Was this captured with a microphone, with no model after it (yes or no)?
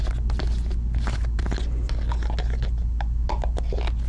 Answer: yes